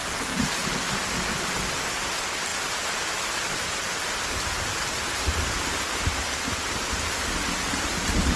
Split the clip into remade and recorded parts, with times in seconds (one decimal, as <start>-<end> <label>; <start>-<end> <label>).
0.0-8.4 recorded